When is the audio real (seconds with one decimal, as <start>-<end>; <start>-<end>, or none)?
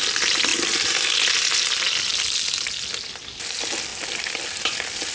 0.0-5.1